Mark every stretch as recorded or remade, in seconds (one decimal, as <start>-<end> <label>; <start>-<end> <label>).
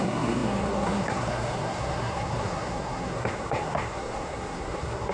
0.0-5.1 remade